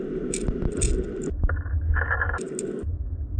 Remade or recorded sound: recorded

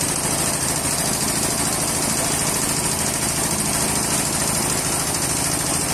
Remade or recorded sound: recorded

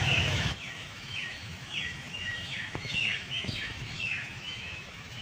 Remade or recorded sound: remade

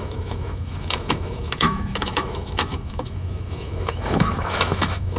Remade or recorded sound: remade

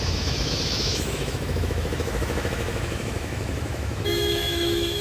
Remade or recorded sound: remade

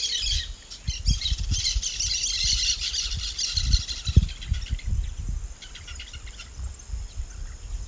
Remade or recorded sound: recorded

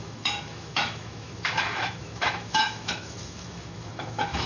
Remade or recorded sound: remade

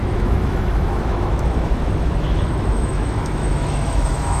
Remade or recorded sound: remade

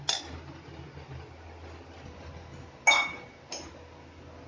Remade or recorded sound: recorded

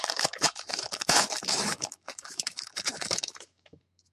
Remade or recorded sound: remade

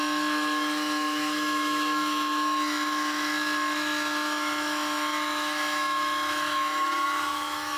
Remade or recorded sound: remade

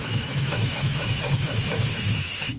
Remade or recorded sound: remade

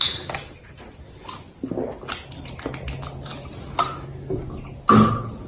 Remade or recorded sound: recorded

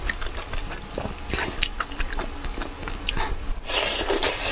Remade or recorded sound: recorded